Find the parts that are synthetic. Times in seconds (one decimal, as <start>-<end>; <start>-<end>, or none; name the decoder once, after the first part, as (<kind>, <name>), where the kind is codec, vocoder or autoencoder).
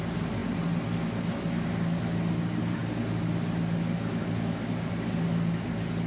none